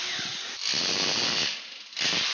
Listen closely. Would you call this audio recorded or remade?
recorded